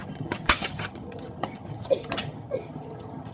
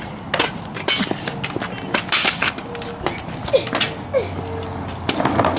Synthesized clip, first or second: first